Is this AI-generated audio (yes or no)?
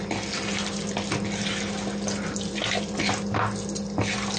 no